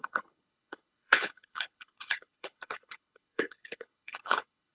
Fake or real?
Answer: fake